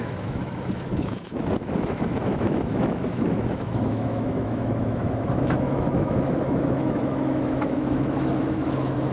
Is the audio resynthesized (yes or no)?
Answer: yes